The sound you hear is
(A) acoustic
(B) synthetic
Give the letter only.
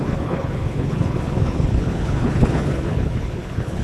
B